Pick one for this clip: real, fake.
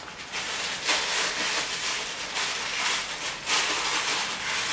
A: real